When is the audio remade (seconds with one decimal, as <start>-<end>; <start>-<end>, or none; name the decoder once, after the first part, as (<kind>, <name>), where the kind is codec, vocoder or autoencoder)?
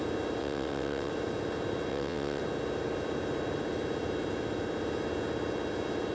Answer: 0.4-1.1 (vocoder, WaveNeXt); 1.9-2.4